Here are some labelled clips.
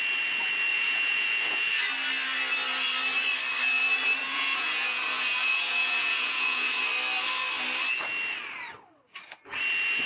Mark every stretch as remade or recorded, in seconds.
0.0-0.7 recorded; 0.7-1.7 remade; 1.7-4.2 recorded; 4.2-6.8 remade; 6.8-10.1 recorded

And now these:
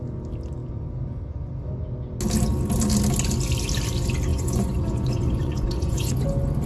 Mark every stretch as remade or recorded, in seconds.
0.0-4.3 recorded; 4.3-6.1 remade; 6.1-6.7 recorded

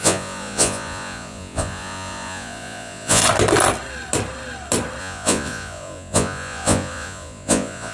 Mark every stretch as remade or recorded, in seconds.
0.0-3.2 remade; 3.2-5.0 recorded; 5.0-7.9 remade

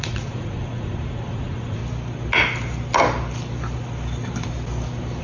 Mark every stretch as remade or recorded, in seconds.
0.0-1.8 remade; 1.8-5.2 recorded

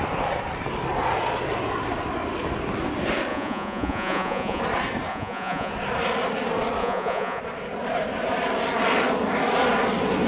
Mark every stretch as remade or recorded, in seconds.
0.0-3.3 recorded; 3.3-4.6 remade; 4.6-5.1 recorded; 5.1-5.7 remade; 5.7-6.8 recorded; 6.8-7.4 remade; 7.4-10.3 recorded

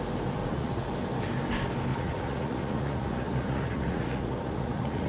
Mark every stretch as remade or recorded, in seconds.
0.0-0.4 recorded; 0.4-0.9 remade; 0.9-1.9 recorded; 1.9-5.1 remade

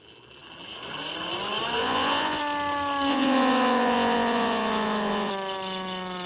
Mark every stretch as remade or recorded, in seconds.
0.0-1.8 recorded; 1.8-2.4 remade; 2.4-3.1 recorded; 3.1-5.3 remade; 5.3-6.3 recorded